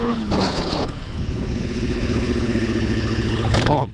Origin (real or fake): fake